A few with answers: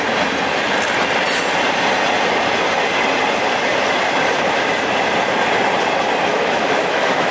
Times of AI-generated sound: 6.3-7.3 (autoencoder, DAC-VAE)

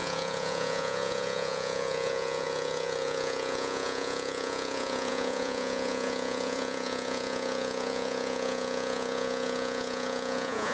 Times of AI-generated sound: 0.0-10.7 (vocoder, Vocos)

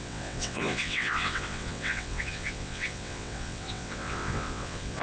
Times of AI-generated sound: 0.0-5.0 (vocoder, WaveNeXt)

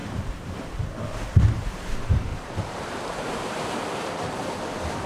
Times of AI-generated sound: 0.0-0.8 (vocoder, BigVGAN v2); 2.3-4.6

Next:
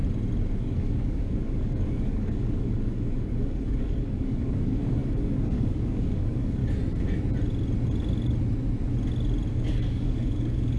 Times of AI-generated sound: 0.6-6.6 (codec, DAC); 9.5-10.8

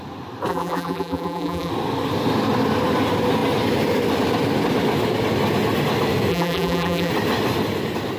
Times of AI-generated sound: 0.5-1.7 (vocoder, BigVGAN v2); 6.3-7.1

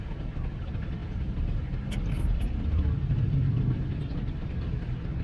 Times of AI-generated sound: 1.0-3.9 (vocoder, BigVGAN v2)

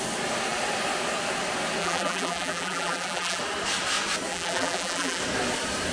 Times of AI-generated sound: 1.8-3.4 (vocoder, BigVGAN v2); 4.3-5.2